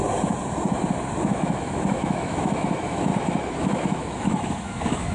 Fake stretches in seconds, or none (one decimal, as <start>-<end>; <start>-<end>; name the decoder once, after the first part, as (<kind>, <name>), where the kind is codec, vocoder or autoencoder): 1.2-3.1 (autoencoder, DAC-VAE); 3.6-5.1